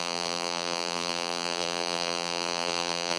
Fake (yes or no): yes